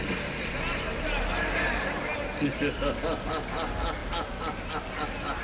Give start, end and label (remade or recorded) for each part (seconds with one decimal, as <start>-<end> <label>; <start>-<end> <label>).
0.0-5.4 recorded